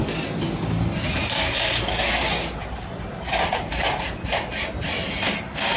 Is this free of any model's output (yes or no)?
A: yes